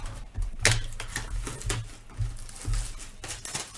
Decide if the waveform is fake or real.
real